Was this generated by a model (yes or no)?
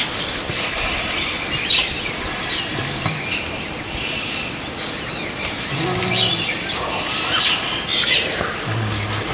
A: no